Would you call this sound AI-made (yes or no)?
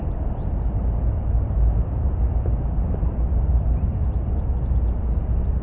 no